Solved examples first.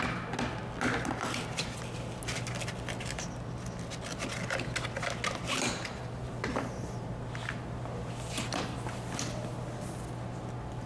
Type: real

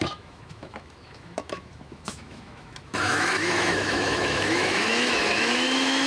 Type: fake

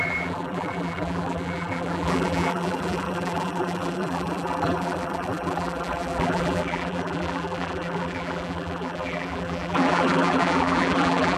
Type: fake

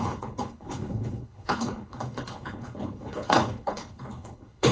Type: fake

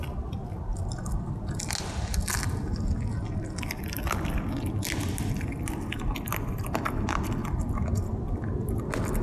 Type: real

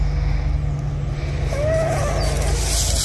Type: real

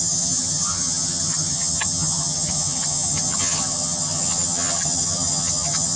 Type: fake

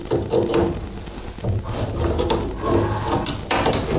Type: real